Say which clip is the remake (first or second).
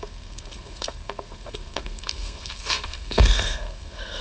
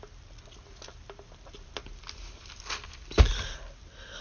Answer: first